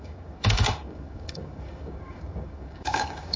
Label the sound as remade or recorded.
remade